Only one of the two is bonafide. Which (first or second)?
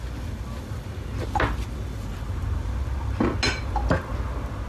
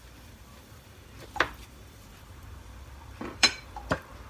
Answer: first